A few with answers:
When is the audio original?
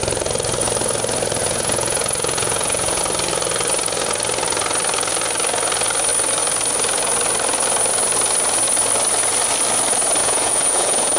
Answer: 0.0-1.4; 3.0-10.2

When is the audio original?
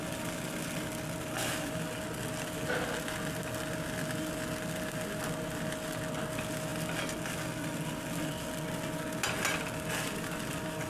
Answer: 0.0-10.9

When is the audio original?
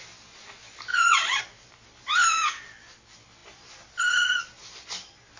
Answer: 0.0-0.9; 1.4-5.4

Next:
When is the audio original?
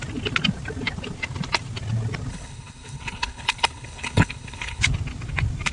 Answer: 0.0-2.3; 4.8-5.7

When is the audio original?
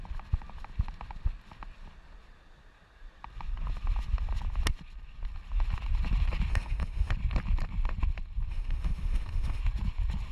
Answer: 0.0-6.5; 7.1-8.5; 9.6-10.3